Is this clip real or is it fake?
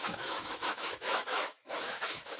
fake